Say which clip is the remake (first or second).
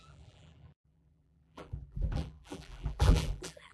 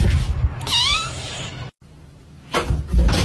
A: first